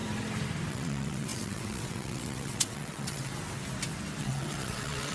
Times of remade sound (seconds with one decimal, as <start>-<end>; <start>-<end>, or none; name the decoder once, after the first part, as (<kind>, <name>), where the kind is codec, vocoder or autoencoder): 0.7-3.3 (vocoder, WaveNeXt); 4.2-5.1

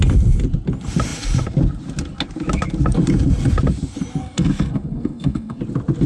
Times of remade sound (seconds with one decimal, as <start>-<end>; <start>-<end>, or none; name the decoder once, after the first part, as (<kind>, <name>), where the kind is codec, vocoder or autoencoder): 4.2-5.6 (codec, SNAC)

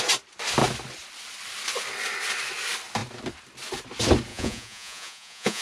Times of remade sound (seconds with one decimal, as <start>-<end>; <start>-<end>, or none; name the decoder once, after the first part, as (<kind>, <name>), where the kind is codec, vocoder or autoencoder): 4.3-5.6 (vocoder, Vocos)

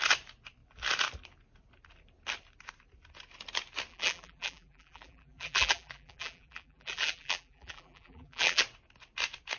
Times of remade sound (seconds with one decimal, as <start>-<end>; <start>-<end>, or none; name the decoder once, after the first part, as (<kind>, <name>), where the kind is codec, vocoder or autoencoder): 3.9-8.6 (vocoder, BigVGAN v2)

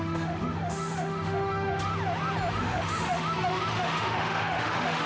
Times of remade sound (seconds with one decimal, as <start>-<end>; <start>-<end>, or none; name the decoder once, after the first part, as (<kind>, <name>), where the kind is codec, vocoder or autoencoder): 0.0-1.9 (autoencoder, DAC-VAE); 2.5-5.1

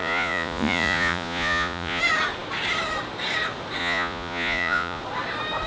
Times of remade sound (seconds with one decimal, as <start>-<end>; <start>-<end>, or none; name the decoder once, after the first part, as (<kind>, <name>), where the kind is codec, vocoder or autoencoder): 0.0-2.0 (vocoder, Vocos); 3.8-5.0

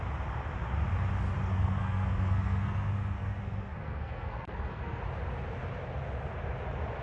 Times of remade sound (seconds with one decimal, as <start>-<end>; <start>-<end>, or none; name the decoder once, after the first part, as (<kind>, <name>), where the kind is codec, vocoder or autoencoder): 1.4-5.0 (codec, SNAC)

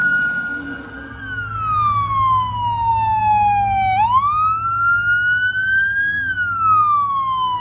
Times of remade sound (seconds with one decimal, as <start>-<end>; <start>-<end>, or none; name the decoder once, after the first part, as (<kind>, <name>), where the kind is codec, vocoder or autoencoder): 0.0-1.2 (vocoder, BigVGAN v2)